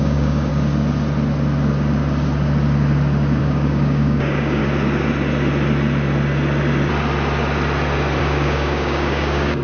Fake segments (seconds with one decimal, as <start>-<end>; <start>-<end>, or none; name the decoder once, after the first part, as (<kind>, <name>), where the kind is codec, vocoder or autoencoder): 0.0-0.5 (codec, DAC); 3.4-4.6; 8.2-9.6